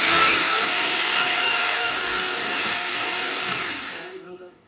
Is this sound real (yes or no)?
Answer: no